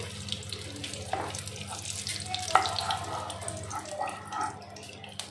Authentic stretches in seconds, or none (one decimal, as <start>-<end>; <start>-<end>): 0.0-5.3

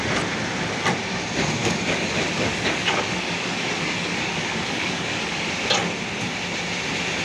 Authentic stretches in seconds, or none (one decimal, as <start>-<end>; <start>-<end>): 0.0-1.6; 2.1-2.5; 5.5-7.2

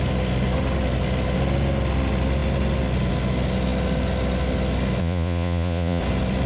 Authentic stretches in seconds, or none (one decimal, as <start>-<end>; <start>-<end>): 0.0-5.0; 6.0-6.5

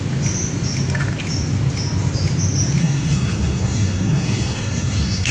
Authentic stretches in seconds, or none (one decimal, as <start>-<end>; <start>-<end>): 0.0-2.8

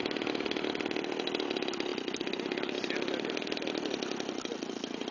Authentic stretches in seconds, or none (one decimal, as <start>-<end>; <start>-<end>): 0.0-5.1

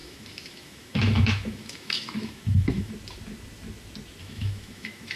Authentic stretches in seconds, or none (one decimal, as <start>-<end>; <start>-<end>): 2.9-4.2

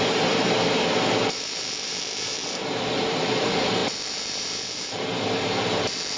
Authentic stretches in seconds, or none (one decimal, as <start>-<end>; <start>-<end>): none